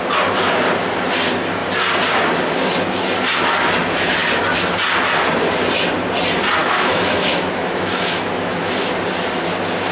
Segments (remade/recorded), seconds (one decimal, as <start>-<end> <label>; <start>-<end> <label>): 0.0-6.6 recorded; 6.6-8.7 remade; 8.7-9.9 recorded

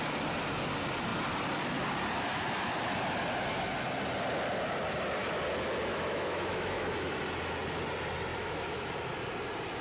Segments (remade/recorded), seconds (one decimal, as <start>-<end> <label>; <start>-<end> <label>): 0.0-5.9 recorded; 5.9-7.2 remade; 7.2-8.3 recorded; 8.3-8.9 remade; 8.9-9.8 recorded